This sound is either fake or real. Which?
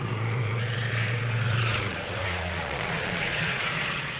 fake